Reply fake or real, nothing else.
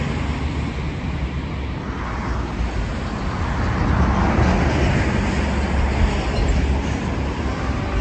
real